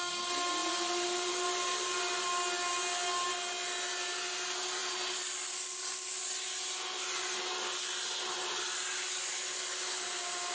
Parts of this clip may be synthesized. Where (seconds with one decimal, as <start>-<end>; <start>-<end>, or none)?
none

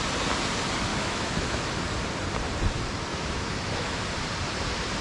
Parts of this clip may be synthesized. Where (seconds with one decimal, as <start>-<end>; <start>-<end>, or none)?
0.9-1.6; 3.1-4.0

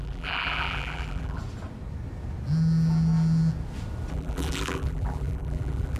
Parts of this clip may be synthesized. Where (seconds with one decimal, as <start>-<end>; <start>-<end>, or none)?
0.0-1.4; 4.1-6.0

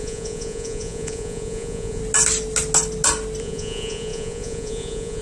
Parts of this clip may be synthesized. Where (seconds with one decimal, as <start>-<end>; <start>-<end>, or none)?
0.0-2.0; 3.4-5.2